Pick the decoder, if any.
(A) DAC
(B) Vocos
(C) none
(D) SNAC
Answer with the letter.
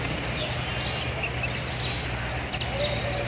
C